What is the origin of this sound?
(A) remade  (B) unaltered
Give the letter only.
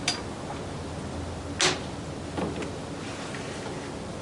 B